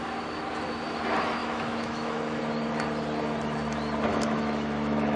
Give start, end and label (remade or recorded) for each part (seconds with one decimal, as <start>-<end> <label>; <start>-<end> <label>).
0.0-1.4 recorded; 1.4-2.4 remade; 2.4-4.1 recorded; 4.1-5.2 remade